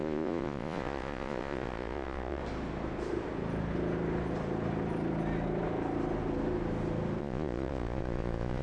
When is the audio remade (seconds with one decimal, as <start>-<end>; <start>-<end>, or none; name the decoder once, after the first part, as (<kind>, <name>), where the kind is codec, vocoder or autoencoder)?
0.0-2.4 (vocoder, Vocos); 7.2-8.6